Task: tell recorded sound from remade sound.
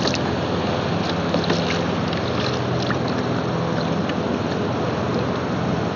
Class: recorded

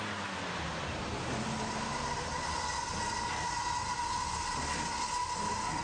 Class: recorded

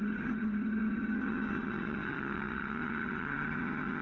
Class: remade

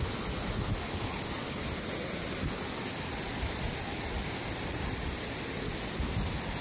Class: recorded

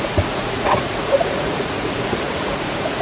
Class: remade